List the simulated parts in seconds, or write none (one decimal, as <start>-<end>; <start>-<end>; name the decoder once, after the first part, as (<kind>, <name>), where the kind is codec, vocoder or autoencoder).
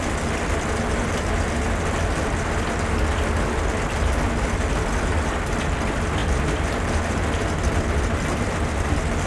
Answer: 6.2-7.1 (vocoder, BigVGAN v2)